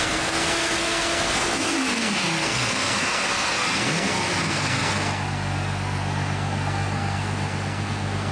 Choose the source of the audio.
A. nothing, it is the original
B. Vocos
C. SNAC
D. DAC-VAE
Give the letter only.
C